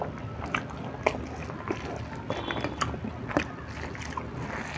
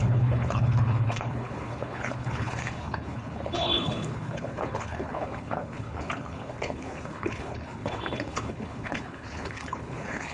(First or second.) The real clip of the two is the first